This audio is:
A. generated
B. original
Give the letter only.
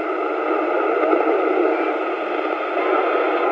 B